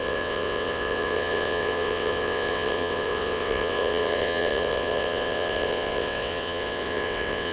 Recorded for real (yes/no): no